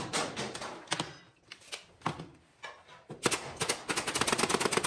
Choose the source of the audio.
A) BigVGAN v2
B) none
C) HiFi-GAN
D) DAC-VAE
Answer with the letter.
B